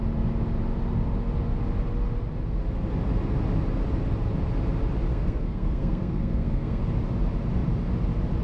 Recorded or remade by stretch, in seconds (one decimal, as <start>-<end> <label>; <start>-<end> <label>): 0.0-5.1 recorded; 5.1-6.8 remade; 6.8-8.4 recorded